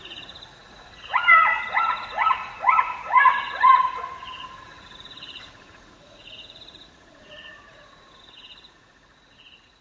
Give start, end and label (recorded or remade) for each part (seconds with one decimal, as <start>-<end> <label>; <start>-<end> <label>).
0.0-9.8 remade